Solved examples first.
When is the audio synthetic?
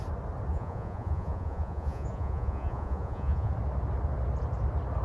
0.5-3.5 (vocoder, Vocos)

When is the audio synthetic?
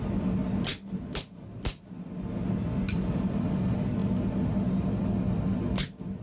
none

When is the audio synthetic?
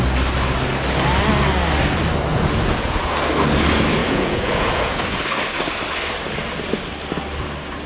2.3-3.2 (vocoder, Vocos); 4.0-5.2